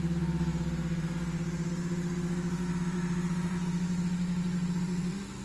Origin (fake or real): real